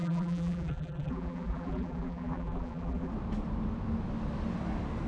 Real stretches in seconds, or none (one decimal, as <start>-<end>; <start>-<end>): 3.1-5.1